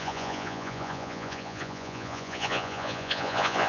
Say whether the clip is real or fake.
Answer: fake